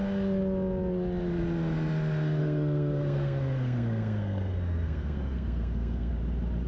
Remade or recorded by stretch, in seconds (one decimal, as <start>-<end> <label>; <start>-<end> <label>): 0.0-2.4 recorded; 2.4-6.1 remade; 6.1-6.7 recorded